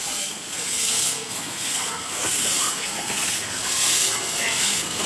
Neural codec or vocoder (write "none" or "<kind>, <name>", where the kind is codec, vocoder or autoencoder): codec, SNAC